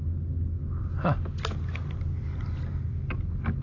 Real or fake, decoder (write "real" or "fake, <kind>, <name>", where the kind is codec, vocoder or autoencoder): real